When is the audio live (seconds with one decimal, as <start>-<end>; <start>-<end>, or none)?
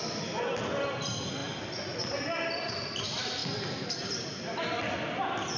0.0-5.6